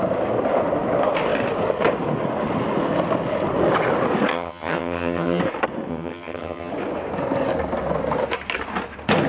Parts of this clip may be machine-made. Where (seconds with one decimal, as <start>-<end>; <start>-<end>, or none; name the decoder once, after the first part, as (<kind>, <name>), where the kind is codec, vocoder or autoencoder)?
4.3-5.4 (vocoder, HiFi-GAN); 5.9-6.7